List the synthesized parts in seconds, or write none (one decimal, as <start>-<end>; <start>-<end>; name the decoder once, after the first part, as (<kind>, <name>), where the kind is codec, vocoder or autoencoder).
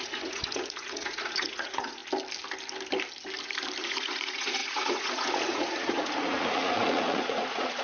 0.0-2.0 (vocoder, Vocos); 3.8-7.8